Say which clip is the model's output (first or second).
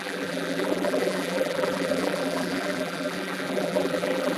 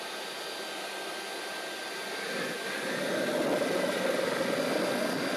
first